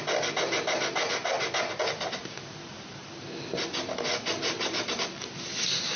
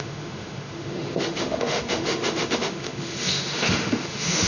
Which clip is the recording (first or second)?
first